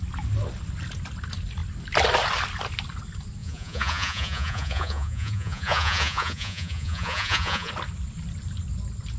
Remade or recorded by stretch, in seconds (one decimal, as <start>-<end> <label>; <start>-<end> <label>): 0.0-3.4 recorded; 3.4-7.7 remade; 7.7-9.2 recorded